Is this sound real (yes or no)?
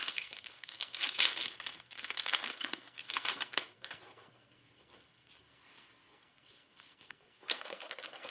no